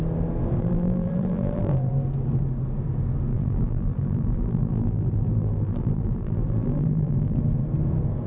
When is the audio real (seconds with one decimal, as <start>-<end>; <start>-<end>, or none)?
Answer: 0.0-0.6; 1.9-3.3; 7.4-8.3